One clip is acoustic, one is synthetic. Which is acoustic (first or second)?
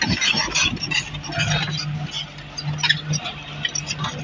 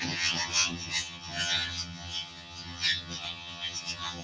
first